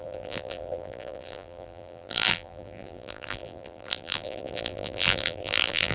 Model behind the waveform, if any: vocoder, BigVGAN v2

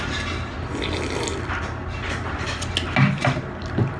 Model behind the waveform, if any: none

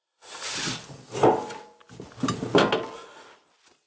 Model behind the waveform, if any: none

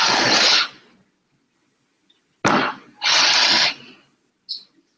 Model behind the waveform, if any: none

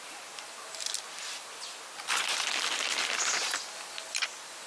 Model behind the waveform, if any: none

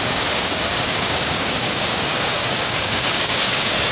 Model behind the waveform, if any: codec, DAC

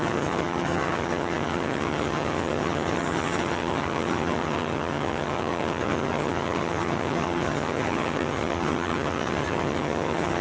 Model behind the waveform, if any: vocoder, HiFi-GAN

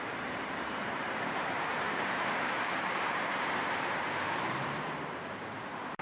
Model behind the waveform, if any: vocoder, BigVGAN v2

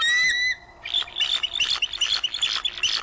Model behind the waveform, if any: none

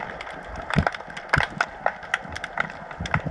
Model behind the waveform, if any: none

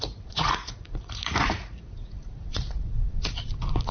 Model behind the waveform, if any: vocoder, Vocos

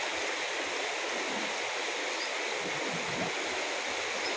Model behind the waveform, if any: none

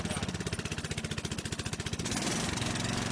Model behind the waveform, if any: none